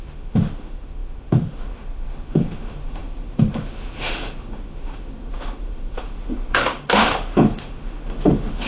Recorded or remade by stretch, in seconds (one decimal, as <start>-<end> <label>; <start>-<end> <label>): 0.0-8.7 remade